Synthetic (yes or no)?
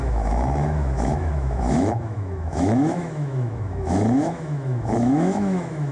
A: yes